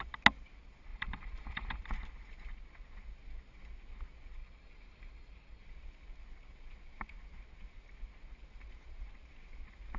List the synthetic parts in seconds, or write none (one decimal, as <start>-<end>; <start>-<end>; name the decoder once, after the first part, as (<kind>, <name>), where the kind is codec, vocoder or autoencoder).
0.9-1.8 (vocoder, BigVGAN v2); 4.4-5.6